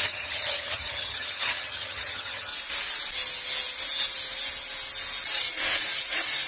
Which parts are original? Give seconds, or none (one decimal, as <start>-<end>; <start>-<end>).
2.5-6.5